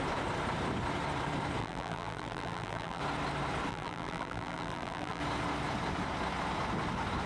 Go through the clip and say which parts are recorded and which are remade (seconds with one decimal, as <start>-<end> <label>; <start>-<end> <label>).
0.0-1.6 recorded; 1.6-3.0 remade; 3.0-3.7 recorded; 3.7-5.2 remade; 5.2-7.3 recorded